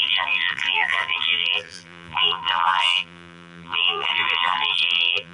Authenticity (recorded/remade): remade